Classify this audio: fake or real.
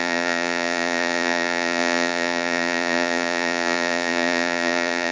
fake